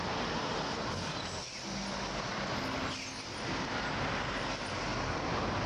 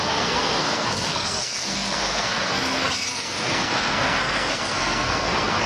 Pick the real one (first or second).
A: first